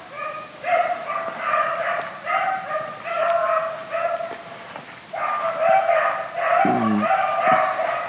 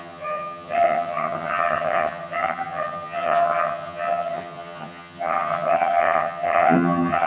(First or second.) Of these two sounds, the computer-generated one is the second